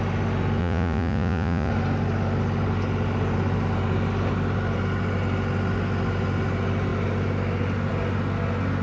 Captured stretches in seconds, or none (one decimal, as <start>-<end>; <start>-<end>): 0.0-0.6; 1.7-8.8

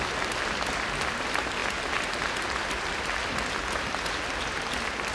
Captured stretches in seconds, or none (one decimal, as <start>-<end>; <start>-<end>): 0.0-5.1